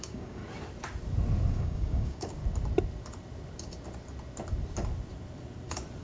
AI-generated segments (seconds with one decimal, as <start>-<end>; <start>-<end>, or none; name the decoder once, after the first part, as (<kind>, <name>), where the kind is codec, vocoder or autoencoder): 0.0-0.4 (codec, DAC); 1.5-2.4